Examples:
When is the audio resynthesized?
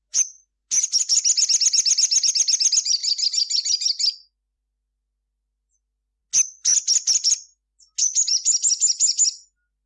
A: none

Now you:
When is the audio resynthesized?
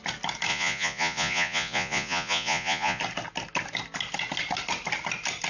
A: 0.5-3.0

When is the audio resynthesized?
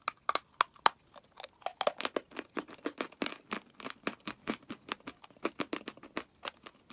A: none